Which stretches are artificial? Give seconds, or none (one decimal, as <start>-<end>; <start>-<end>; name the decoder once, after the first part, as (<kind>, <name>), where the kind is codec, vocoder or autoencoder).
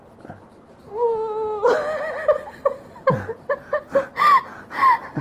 none